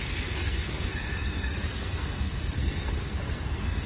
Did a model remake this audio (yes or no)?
yes